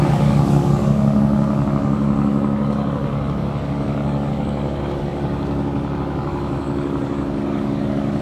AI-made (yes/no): yes